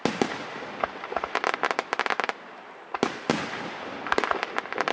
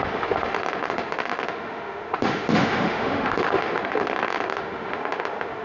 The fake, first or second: second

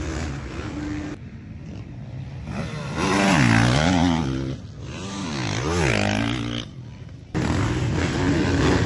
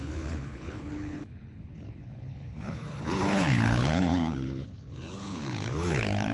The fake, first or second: second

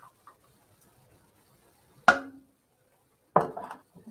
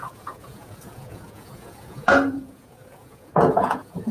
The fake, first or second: second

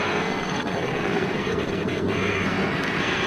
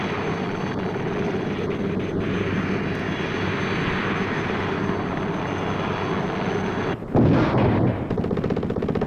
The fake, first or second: first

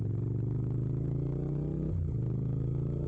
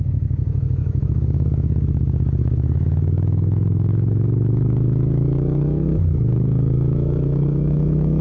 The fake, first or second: second